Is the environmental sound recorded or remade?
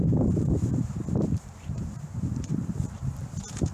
remade